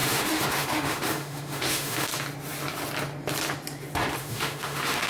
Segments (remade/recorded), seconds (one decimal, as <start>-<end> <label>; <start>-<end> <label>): 0.0-2.1 remade; 2.1-4.2 recorded; 4.2-5.1 remade